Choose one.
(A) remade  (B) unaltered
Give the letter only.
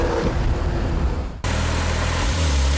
A